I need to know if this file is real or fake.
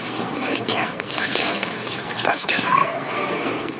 fake